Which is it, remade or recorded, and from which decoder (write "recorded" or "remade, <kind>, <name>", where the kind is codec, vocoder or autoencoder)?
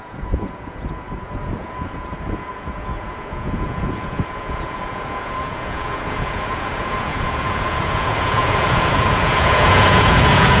remade, vocoder, Vocos